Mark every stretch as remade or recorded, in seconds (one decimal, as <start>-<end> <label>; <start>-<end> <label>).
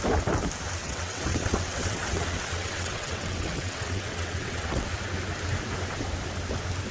0.0-0.8 recorded; 0.8-4.9 remade; 4.9-6.9 recorded